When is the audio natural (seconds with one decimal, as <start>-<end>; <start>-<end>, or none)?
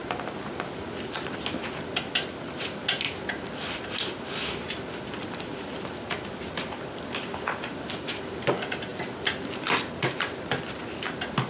0.0-11.5